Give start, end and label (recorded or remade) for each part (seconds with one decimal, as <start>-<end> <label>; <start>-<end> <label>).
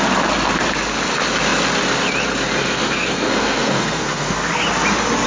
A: 0.0-2.6 recorded; 2.6-4.5 remade; 4.5-5.3 recorded